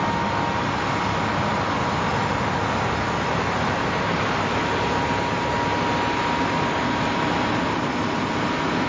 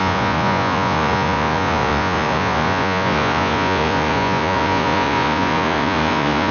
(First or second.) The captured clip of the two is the first